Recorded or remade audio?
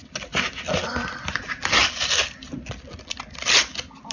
recorded